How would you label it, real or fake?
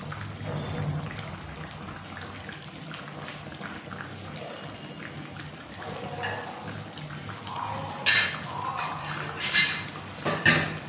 real